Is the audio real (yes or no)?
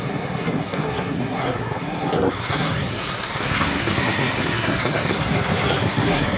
no